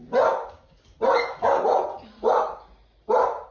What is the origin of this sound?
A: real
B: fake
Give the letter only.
A